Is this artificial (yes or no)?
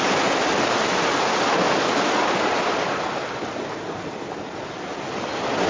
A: no